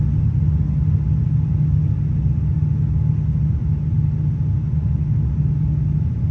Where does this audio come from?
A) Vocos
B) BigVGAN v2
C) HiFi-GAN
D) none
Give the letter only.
D